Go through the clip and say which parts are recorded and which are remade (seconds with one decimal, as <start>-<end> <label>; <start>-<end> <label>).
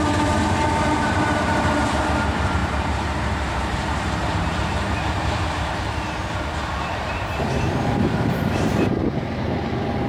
0.0-10.1 remade